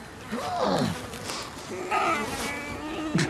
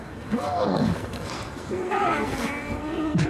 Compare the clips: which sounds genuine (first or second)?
first